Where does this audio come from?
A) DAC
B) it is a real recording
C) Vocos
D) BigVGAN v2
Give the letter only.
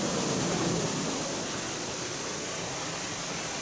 B